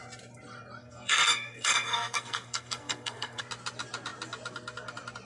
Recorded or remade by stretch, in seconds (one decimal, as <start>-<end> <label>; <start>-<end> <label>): 0.0-0.8 recorded; 0.8-3.4 remade; 3.4-5.3 recorded